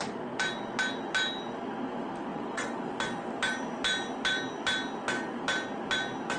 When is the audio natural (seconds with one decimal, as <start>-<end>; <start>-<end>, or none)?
0.0-2.3; 2.9-6.4